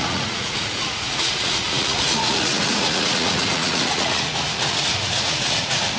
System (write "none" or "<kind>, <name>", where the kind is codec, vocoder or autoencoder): vocoder, Vocos